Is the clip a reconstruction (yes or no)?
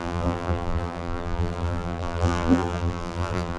yes